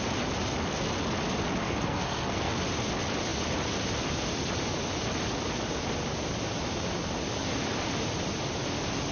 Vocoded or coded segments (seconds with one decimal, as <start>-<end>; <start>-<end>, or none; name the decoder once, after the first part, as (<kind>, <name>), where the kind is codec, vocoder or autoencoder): 1.6-2.5 (codec, SNAC)